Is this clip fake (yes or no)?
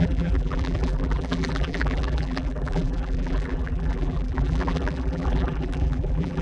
yes